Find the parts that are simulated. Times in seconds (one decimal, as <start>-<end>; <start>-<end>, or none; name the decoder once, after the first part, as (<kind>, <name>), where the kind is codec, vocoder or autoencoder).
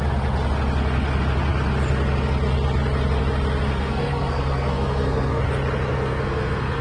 3.7-5.4 (codec, SNAC); 5.9-6.8